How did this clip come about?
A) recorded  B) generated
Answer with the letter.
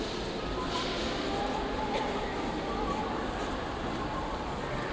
A